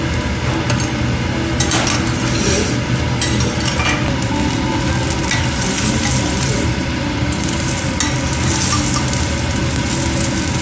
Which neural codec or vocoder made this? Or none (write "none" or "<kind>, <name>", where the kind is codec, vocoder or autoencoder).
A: none